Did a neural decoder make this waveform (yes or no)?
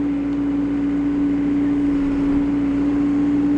no